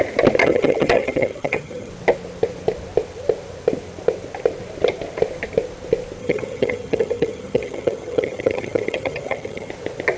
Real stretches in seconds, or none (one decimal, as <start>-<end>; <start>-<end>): 0.0-0.4; 1.9-6.2; 9.7-10.2